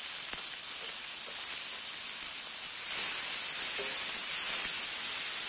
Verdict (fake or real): real